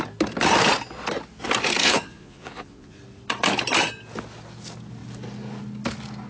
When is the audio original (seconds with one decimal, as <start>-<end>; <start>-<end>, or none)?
0.0-1.8; 3.0-6.3